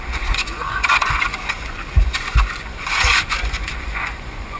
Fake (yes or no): yes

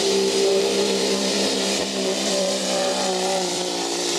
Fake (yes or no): yes